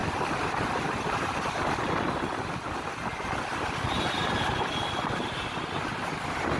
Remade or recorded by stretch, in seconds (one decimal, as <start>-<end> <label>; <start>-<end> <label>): 0.0-3.5 recorded; 3.5-5.3 remade; 5.3-6.6 recorded